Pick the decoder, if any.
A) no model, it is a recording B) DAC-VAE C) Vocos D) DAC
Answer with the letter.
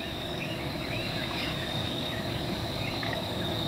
D